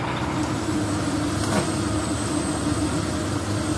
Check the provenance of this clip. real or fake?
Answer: real